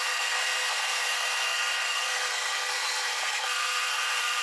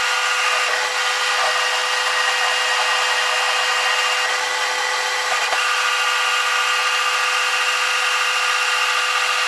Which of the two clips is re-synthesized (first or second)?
first